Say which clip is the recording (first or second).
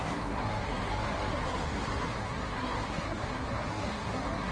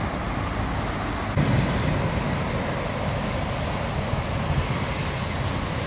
second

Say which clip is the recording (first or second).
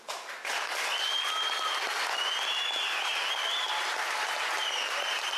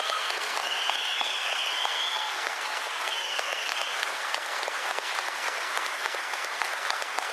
first